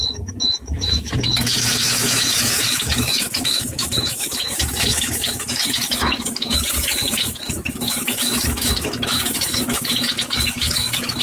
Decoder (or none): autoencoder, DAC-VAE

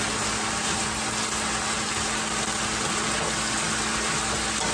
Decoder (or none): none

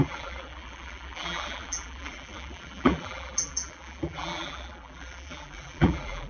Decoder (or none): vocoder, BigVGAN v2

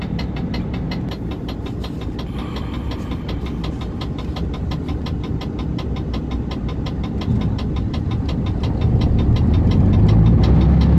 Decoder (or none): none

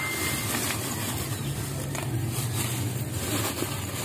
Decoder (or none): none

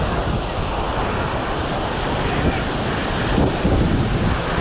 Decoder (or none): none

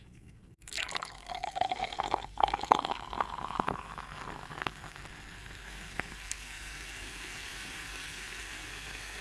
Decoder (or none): codec, SNAC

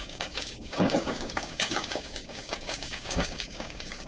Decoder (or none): codec, DAC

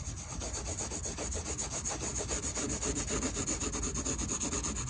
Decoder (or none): none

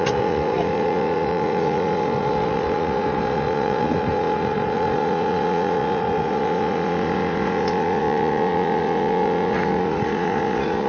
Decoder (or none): vocoder, Vocos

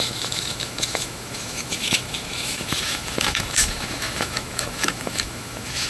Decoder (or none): autoencoder, DAC-VAE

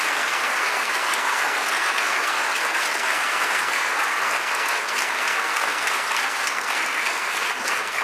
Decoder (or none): codec, SNAC